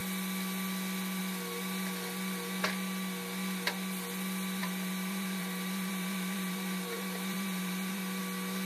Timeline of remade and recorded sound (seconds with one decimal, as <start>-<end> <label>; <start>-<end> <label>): 0.0-4.6 recorded; 4.6-8.2 remade; 8.2-8.7 recorded